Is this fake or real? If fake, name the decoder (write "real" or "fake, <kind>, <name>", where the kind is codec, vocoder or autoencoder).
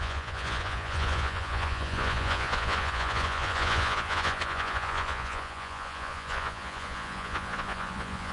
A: fake, vocoder, Vocos